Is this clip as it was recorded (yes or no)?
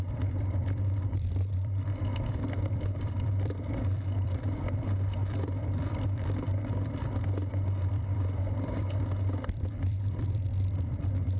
no